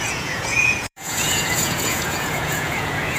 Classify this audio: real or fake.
fake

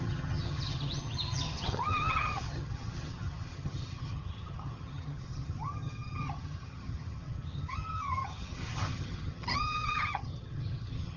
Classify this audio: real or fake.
fake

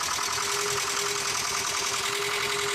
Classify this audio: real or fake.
real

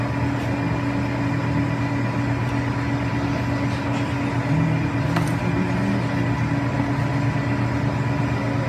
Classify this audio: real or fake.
real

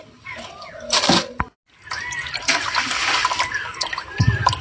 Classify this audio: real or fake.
real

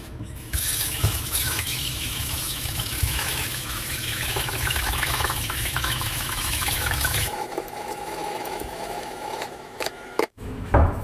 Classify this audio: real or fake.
fake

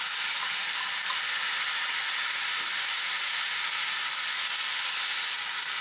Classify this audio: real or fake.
real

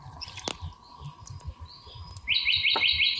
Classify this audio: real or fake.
real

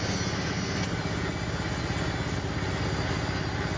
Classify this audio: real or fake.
real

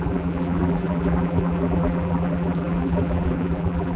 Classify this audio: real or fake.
fake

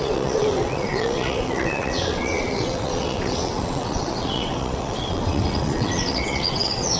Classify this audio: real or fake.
fake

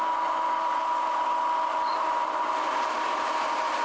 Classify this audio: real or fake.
real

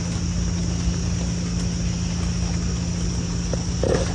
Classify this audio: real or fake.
real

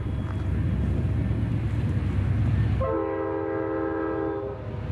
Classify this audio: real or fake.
real